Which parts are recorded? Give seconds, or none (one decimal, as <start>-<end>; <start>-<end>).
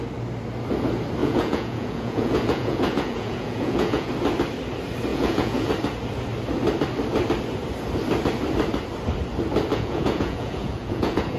0.0-1.2; 4.1-5.1; 5.7-9.7